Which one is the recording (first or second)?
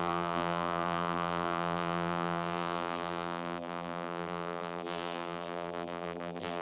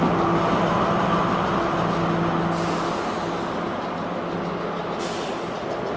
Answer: second